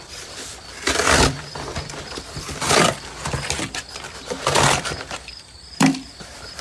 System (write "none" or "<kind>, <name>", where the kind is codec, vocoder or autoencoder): vocoder, BigVGAN v2